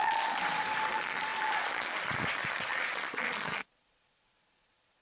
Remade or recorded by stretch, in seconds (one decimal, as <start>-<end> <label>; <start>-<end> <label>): 0.0-0.4 remade; 0.4-0.9 recorded; 0.9-5.0 remade